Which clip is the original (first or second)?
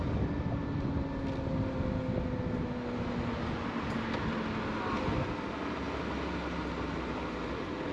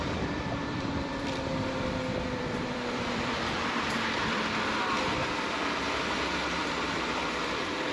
first